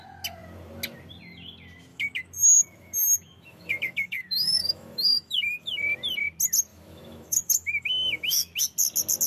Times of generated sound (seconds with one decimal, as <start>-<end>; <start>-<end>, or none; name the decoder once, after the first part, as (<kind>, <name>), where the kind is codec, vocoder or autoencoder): 1.9-5.8 (autoencoder, DAC-VAE); 6.7-8.6